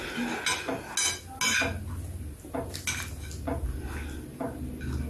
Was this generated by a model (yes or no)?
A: no